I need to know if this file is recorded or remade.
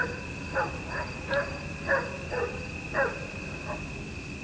recorded